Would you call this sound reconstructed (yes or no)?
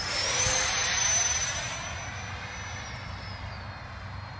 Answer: no